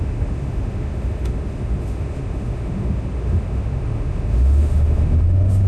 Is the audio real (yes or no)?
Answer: no